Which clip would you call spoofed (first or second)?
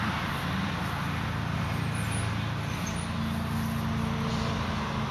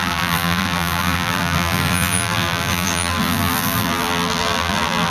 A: second